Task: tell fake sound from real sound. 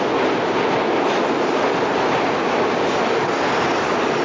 real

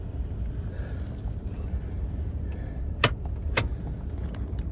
real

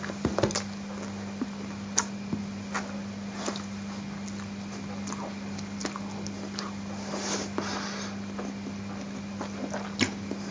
real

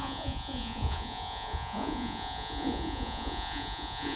fake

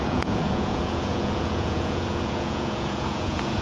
fake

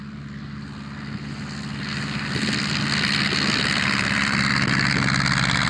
real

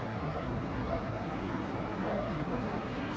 fake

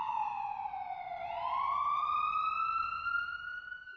real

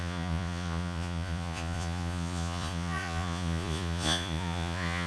fake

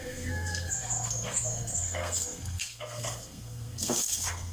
fake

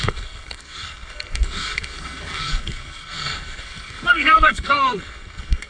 fake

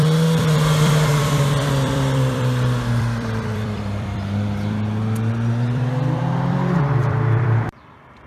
fake